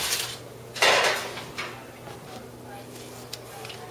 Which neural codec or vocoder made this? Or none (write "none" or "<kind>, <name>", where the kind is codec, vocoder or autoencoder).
none